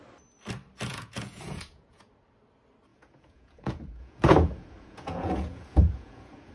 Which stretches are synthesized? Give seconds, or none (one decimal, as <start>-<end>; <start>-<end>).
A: 0.9-2.1; 2.9-6.5